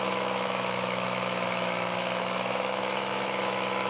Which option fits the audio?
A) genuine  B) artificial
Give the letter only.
B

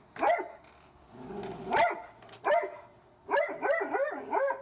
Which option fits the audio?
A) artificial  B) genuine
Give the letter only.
B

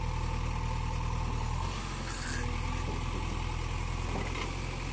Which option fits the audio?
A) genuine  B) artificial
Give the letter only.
A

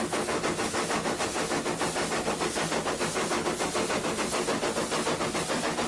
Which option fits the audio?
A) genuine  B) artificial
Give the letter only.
A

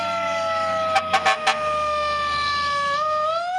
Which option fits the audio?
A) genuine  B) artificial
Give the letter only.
A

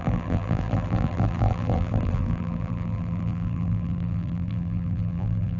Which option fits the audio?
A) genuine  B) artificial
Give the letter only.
B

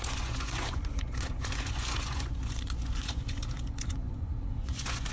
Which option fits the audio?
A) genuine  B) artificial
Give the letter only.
B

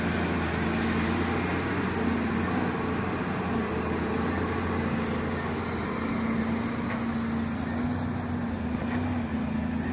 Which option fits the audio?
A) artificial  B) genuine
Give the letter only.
B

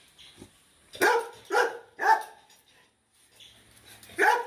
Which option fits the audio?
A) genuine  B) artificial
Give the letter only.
A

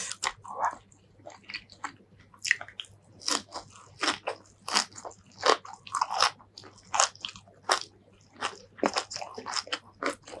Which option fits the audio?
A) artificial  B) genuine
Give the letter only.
B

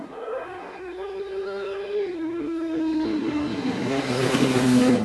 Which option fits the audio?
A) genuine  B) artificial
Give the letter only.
B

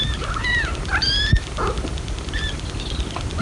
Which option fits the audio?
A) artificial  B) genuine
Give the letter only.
B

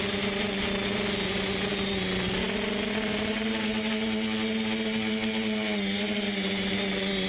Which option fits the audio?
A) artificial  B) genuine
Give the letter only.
B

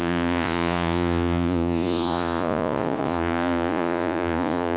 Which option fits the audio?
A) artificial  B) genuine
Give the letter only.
A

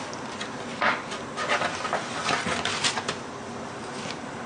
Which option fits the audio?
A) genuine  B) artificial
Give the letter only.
A